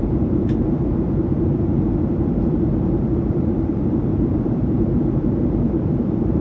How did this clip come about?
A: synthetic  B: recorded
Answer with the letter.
A